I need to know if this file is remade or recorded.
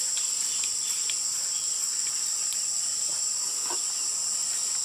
recorded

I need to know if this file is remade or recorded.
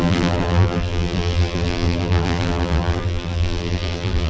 remade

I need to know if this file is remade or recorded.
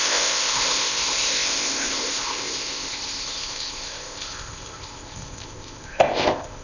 remade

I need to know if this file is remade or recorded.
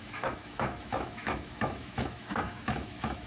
remade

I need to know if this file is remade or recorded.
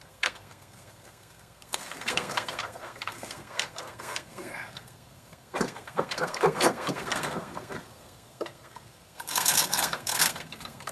remade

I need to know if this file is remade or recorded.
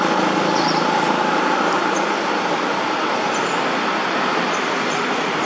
recorded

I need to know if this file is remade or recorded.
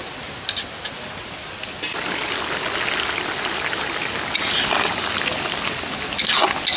recorded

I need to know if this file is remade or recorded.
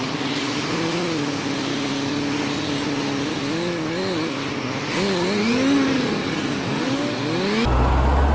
recorded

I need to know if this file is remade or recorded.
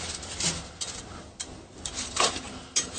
recorded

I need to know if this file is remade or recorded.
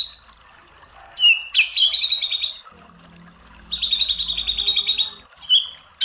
recorded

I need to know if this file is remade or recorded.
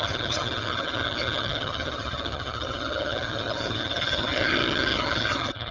remade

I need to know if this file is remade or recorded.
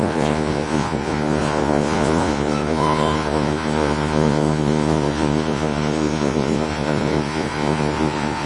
remade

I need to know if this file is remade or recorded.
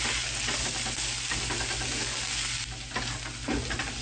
recorded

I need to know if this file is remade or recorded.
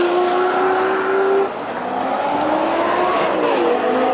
recorded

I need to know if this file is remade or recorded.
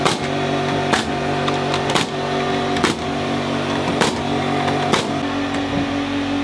recorded